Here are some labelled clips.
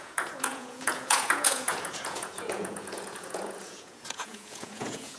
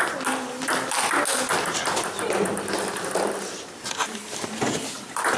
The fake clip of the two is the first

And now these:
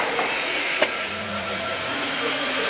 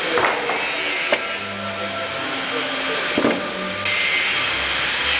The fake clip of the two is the first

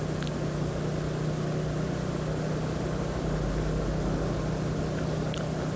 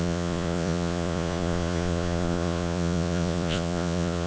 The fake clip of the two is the second